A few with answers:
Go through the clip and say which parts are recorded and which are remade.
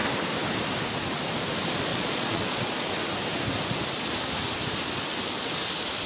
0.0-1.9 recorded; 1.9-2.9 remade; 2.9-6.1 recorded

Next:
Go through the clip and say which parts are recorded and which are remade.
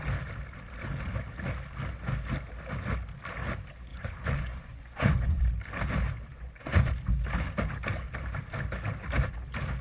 0.0-3.9 recorded; 3.9-5.4 remade; 5.4-6.3 recorded; 6.3-6.9 remade; 6.9-9.8 recorded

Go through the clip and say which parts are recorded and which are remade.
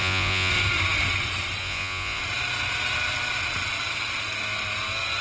0.0-0.5 remade; 0.5-1.6 recorded; 1.6-2.2 remade; 2.2-5.2 recorded